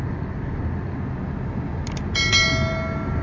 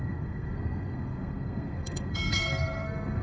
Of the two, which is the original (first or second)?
first